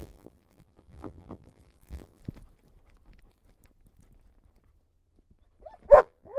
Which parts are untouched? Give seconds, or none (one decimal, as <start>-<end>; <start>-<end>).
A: 2.2-6.0